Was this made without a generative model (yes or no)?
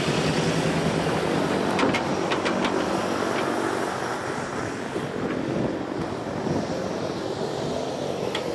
yes